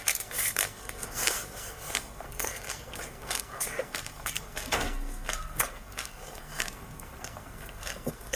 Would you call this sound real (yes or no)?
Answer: no